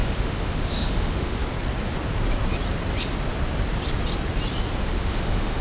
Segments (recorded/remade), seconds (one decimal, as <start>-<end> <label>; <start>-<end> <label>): 0.0-1.4 remade; 1.4-4.8 recorded; 4.8-5.6 remade